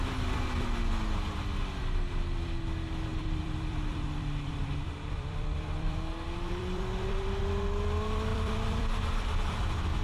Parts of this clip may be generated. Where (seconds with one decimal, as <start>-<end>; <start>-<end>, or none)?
3.1-7.4; 8.3-9.3